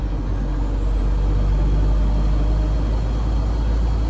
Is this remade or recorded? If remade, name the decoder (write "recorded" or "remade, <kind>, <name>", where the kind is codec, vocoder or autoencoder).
recorded